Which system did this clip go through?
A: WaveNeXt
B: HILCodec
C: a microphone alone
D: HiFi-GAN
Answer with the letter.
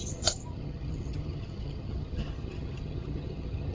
D